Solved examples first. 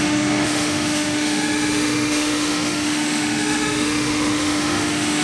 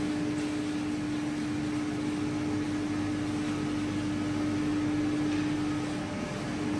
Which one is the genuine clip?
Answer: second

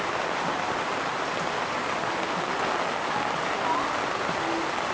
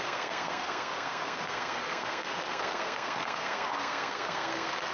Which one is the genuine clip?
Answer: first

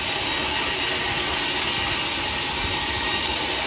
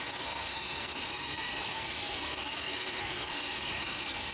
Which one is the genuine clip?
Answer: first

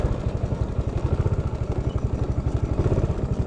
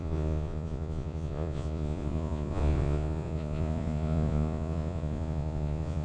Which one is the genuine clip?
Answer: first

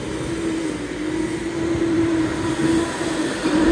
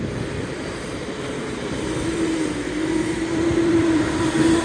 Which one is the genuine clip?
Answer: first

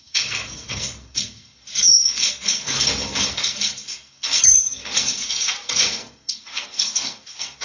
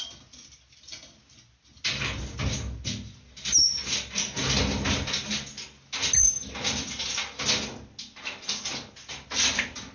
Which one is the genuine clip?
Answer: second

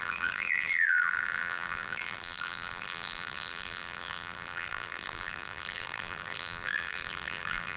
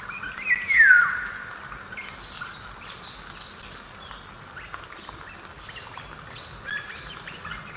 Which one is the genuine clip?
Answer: second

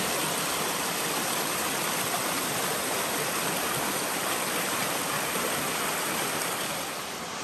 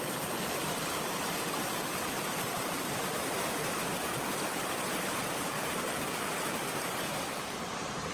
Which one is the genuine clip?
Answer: first